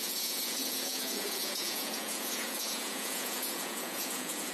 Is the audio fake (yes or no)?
yes